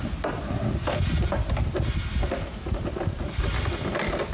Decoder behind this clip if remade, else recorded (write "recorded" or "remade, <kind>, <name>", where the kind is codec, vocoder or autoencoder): remade, vocoder, BigVGAN v2